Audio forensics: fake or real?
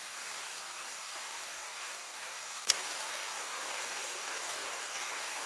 fake